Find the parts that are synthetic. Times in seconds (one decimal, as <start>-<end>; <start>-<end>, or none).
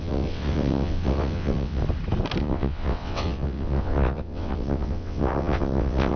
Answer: 0.0-1.8; 2.4-6.2